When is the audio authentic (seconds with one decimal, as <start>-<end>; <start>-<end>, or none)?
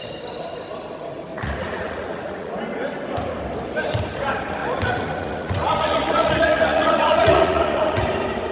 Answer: 0.0-1.3; 2.5-4.6; 8.0-8.5